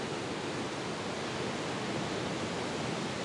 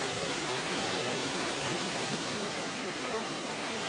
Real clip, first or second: first